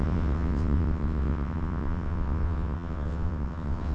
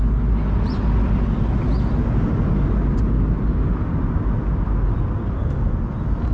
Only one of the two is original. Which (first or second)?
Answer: second